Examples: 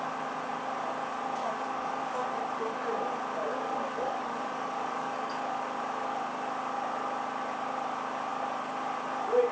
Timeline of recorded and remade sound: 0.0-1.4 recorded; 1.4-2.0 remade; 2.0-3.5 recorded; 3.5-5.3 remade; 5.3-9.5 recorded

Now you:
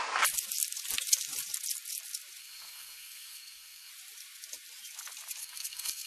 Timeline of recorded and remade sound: 0.0-2.4 recorded; 2.4-3.9 remade; 3.9-5.4 recorded; 5.4-6.1 remade

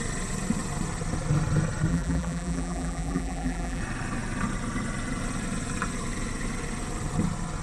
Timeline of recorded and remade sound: 0.0-1.9 recorded; 1.9-3.8 remade; 3.8-7.6 recorded

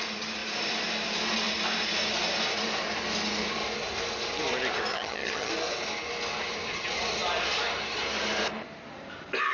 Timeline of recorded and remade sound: 0.0-4.9 recorded; 4.9-5.5 remade; 5.5-9.5 recorded

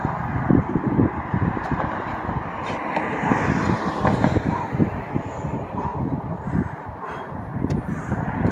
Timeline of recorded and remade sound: 0.0-8.5 recorded

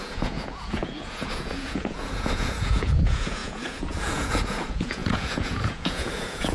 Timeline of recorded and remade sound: 0.0-6.5 remade

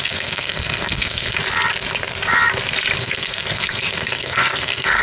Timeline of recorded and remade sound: 0.0-1.4 remade; 1.4-3.0 recorded; 3.0-5.0 remade